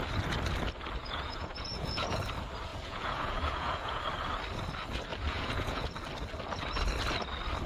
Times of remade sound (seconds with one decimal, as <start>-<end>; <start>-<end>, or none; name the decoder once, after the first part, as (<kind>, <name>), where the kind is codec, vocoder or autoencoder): 1.0-2.2 (vocoder, Vocos); 2.7-4.0; 5.1-5.9